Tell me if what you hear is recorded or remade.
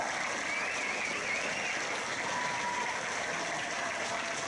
recorded